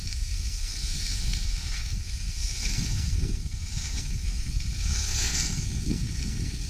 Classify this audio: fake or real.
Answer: fake